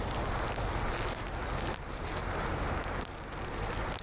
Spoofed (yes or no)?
no